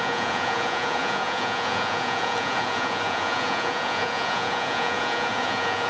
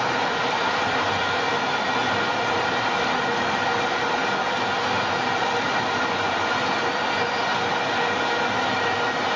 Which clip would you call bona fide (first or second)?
second